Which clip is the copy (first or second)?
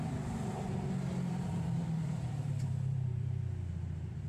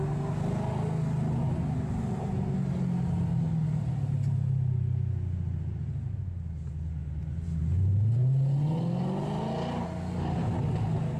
first